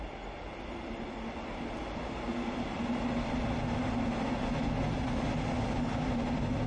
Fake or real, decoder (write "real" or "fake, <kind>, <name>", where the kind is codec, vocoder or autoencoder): real